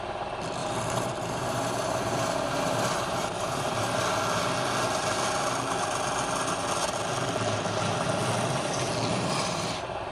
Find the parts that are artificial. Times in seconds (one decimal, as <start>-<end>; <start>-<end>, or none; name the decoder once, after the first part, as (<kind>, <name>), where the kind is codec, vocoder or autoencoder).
0.6-4.0 (vocoder, BigVGAN v2); 9.1-9.6